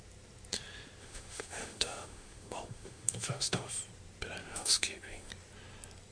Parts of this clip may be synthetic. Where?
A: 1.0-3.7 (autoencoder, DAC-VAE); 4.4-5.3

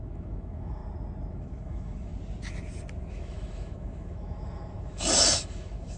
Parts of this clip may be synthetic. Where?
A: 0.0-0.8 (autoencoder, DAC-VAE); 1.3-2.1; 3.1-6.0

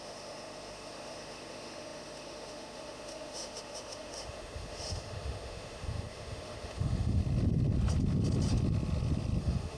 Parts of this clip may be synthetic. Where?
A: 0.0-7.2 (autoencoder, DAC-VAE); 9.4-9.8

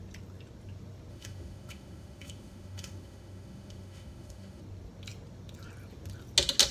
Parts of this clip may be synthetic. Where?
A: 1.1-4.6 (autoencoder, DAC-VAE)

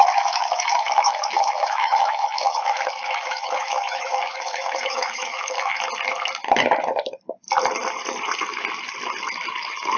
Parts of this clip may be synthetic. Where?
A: 0.0-5.7 (autoencoder, DAC-VAE)